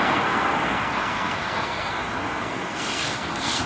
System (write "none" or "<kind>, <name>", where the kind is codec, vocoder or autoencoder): codec, SNAC